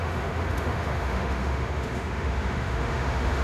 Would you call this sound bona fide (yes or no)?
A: no